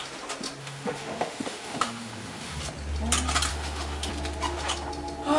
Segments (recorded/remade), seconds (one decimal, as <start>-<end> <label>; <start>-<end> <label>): 0.0-0.6 recorded; 0.6-2.6 remade; 2.6-3.5 recorded; 3.5-4.1 remade; 4.1-5.4 recorded